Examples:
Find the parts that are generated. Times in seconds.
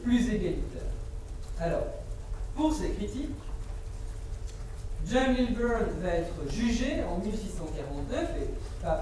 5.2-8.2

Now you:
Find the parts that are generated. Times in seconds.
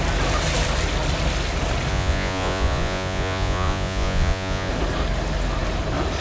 1.9-4.7